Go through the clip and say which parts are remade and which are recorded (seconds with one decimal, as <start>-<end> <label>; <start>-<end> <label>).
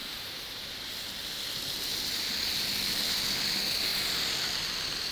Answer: 0.0-0.9 remade; 0.9-5.1 recorded